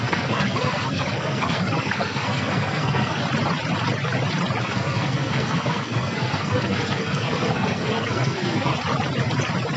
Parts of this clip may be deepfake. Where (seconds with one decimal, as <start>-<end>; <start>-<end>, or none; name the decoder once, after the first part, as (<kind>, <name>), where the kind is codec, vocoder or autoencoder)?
0.0-3.2 (codec, SNAC); 4.6-8.7